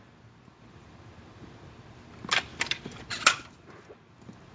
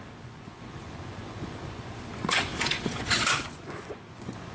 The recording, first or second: first